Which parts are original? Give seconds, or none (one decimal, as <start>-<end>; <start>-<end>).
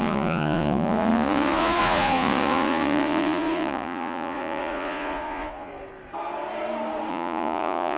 5.7-7.1